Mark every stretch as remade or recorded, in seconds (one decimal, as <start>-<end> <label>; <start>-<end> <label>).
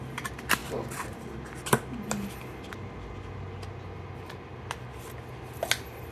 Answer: 0.0-6.1 recorded